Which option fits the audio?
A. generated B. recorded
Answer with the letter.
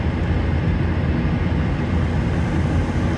B